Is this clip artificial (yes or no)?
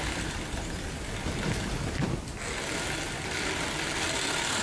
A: no